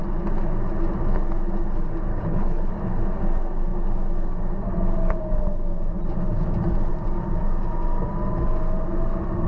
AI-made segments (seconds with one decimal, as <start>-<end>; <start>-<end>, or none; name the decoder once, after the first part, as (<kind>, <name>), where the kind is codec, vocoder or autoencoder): 2.1-2.7 (codec, HILCodec)